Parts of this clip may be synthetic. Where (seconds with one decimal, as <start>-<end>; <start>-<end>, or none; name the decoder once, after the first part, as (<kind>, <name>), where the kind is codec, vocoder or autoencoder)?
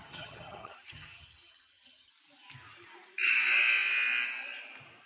0.0-2.1 (vocoder, HiFi-GAN)